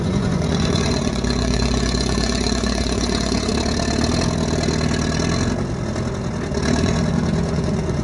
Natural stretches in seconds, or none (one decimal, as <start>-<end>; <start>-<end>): 3.5-6.8